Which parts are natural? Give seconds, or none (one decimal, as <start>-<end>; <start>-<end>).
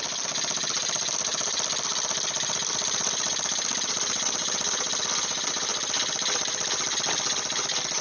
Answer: 0.0-1.3; 5.0-5.7